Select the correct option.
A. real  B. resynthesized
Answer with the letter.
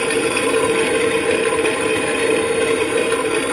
B